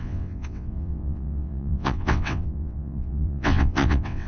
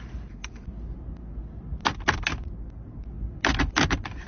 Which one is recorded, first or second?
second